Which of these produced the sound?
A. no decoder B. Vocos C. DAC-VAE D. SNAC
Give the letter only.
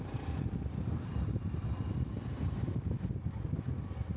A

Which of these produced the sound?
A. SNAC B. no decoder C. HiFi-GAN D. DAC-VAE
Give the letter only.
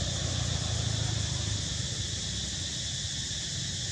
B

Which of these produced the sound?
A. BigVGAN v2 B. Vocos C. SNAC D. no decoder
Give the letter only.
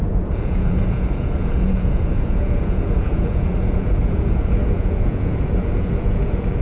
B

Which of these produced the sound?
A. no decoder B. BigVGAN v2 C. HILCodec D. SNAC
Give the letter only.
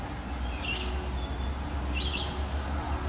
A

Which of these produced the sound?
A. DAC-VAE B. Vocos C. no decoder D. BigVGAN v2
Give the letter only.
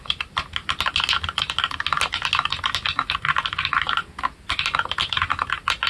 C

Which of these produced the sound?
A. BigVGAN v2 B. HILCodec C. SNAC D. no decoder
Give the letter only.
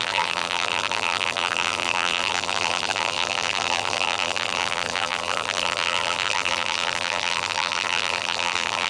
A